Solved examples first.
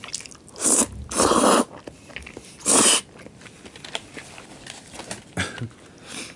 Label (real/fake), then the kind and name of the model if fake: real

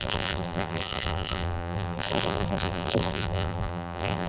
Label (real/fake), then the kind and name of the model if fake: fake, vocoder, BigVGAN v2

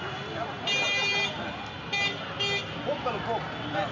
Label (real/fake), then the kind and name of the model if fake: real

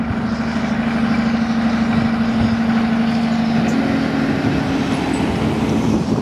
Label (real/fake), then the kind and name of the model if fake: real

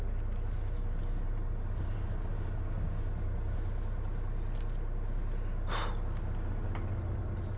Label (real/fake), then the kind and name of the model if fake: real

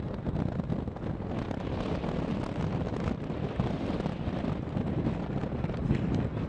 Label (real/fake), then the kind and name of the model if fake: real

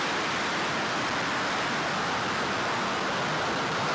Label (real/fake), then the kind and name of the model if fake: real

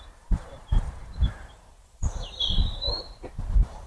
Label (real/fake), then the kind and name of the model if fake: fake, vocoder, BigVGAN v2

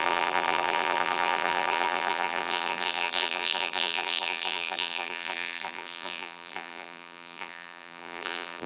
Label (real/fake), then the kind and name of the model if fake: fake, vocoder, BigVGAN v2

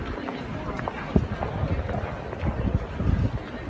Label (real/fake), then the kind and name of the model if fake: real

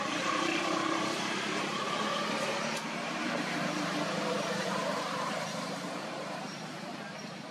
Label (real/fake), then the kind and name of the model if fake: fake, vocoder, BigVGAN v2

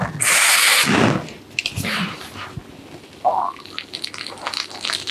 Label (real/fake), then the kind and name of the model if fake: real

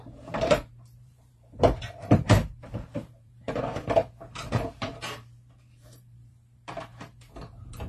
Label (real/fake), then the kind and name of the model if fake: fake, vocoder, BigVGAN v2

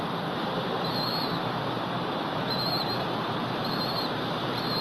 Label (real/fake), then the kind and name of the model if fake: fake, vocoder, BigVGAN v2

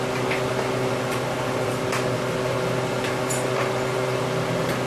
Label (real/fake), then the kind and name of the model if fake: real